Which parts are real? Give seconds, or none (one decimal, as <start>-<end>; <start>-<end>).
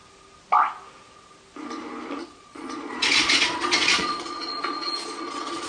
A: 0.0-2.2